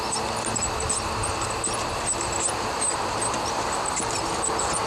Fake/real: real